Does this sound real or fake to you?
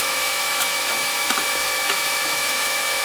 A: fake